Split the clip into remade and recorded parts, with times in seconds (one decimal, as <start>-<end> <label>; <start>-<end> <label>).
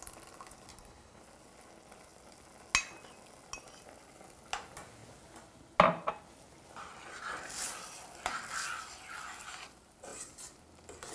0.0-0.7 recorded; 0.7-1.2 remade; 1.2-11.1 recorded